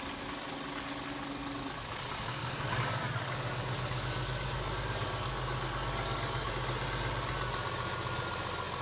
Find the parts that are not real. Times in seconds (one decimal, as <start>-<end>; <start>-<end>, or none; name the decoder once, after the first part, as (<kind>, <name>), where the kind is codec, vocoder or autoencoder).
2.4-6.5 (codec, DAC)